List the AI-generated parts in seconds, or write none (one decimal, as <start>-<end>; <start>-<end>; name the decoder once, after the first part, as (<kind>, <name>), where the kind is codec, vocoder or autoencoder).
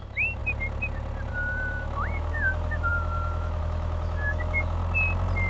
0.0-0.4 (autoencoder, DAC-VAE); 1.3-4.8